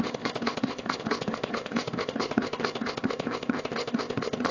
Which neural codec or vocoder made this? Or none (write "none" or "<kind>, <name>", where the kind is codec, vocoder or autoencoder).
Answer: codec, ZipCodec